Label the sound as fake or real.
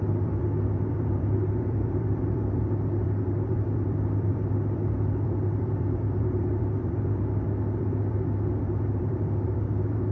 fake